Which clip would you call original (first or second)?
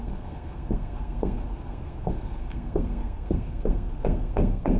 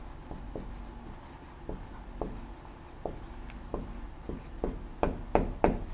second